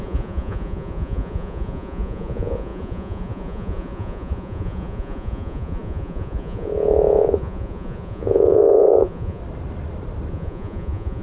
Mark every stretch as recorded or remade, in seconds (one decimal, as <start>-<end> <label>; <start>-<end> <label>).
0.0-9.4 remade; 9.4-10.3 recorded; 10.3-11.2 remade